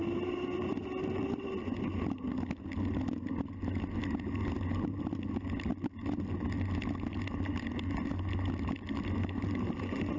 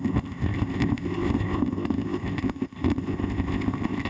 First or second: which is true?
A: first